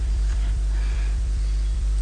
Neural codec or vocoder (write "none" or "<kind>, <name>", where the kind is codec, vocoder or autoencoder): vocoder, BigVGAN v2